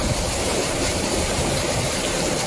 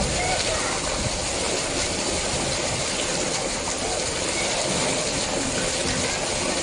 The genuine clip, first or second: second